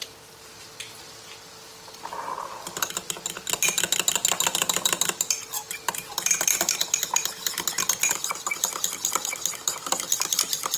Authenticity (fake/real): real